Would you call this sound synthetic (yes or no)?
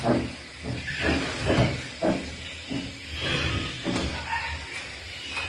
no